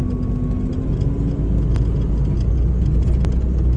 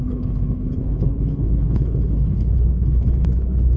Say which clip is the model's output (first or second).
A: second